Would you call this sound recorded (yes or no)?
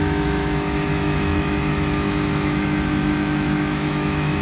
no